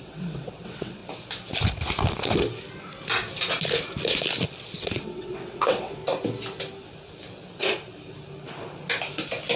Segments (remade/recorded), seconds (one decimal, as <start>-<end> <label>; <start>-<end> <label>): 0.0-1.0 remade; 1.0-4.8 recorded; 4.8-6.0 remade; 6.0-9.6 recorded